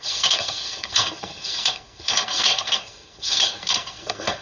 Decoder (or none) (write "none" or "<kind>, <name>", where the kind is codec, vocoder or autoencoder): codec, SNAC